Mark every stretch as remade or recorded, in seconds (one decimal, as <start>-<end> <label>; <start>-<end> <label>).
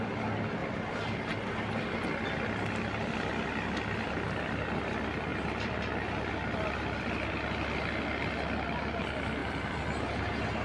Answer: 0.0-5.3 recorded; 5.3-5.9 remade; 5.9-9.4 recorded; 9.4-10.0 remade; 10.0-10.6 recorded